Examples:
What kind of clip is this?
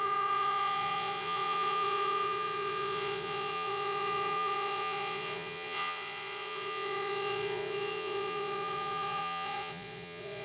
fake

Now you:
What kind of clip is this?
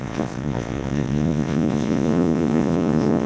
fake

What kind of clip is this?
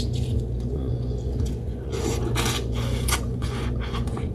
fake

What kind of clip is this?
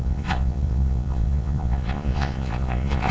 fake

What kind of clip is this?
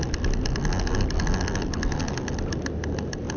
real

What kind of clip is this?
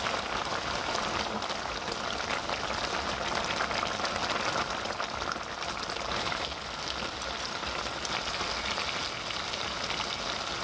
real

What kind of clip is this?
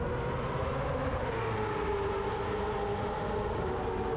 real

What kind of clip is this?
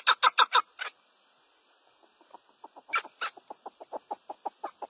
real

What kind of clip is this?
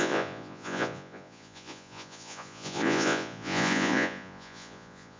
fake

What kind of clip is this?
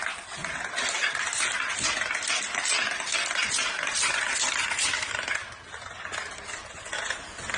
real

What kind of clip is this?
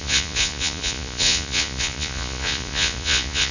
fake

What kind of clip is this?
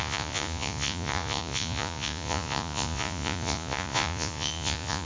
fake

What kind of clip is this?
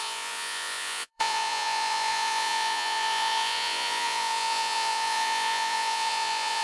fake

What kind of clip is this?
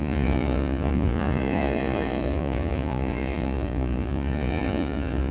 fake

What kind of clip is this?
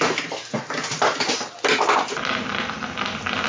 real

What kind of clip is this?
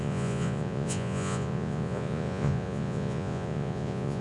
fake